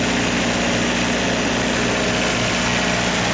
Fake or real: real